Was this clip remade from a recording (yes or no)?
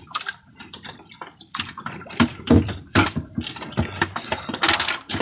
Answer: yes